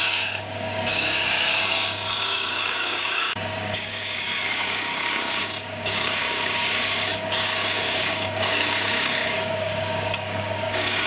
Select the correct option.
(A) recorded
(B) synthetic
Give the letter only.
B